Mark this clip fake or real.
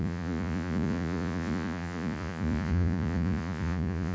fake